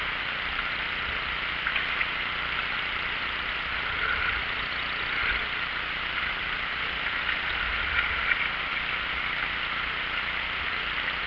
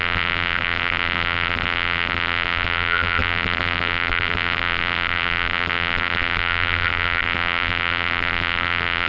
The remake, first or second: second